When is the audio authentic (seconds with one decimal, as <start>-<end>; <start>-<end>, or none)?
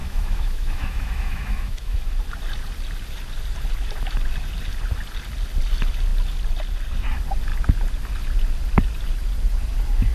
2.1-10.1